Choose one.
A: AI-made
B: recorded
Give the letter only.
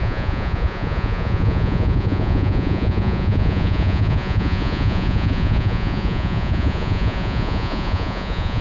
A